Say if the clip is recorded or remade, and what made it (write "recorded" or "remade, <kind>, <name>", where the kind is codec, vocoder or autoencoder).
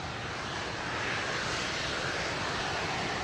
recorded